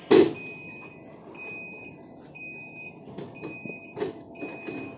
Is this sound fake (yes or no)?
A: no